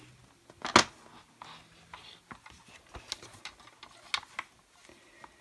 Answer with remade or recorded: recorded